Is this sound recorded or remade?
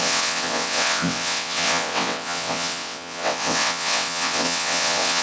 remade